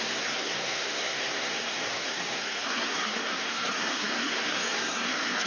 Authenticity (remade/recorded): remade